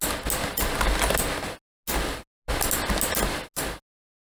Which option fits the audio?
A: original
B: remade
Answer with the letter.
A